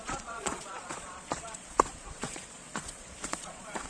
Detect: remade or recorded remade